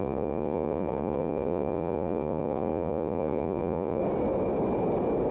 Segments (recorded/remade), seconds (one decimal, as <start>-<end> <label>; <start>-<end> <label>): 0.0-4.0 remade; 4.0-5.3 recorded